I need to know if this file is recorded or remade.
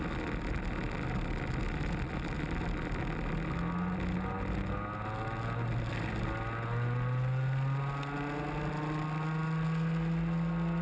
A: recorded